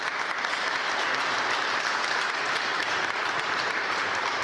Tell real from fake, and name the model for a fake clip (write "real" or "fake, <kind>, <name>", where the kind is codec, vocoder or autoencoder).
fake, vocoder, BigVGAN v2